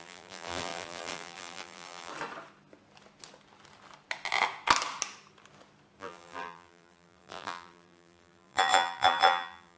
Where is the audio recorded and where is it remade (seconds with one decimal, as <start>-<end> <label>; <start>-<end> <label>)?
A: 0.0-2.1 remade; 2.1-6.0 recorded; 6.0-9.8 remade